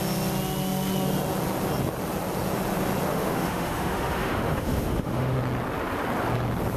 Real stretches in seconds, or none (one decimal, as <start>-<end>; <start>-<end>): 0.0-3.1; 5.4-6.8